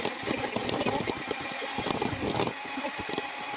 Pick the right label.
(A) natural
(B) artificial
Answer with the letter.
A